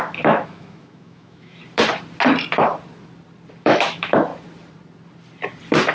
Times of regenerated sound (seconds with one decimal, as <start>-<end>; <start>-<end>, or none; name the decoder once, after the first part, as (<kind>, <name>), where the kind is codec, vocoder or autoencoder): 0.0-1.6 (autoencoder, DAC-VAE); 3.6-4.3